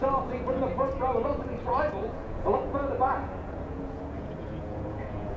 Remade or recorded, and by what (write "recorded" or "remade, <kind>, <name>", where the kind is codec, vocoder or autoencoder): remade, vocoder, Vocos